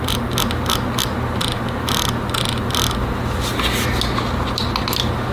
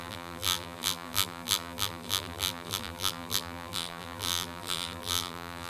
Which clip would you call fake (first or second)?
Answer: second